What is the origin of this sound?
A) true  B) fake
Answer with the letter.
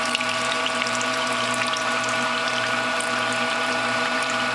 B